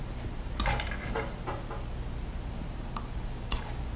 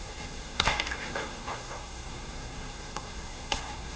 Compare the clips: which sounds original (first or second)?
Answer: first